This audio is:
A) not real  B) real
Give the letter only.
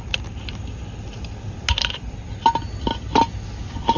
B